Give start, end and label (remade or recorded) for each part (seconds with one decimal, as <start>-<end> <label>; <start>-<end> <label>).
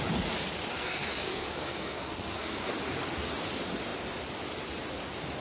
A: 0.0-0.7 recorded; 0.7-2.7 remade; 2.7-5.4 recorded